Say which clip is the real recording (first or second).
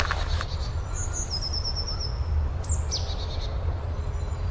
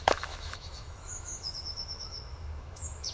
first